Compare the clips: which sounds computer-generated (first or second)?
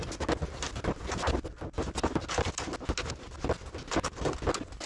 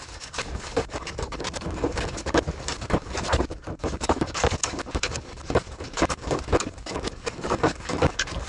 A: second